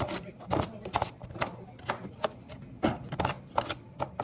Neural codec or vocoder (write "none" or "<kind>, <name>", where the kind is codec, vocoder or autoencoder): none